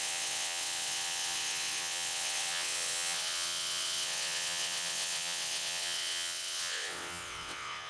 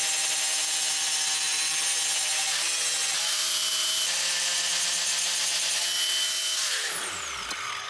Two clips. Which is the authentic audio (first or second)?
second